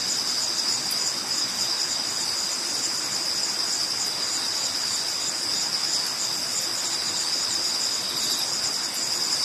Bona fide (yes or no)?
yes